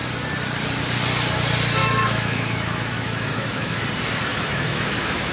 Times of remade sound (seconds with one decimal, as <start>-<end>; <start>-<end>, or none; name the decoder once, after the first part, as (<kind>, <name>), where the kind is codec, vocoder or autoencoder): 1.8-3.8 (autoencoder, DAC-VAE); 4.3-5.3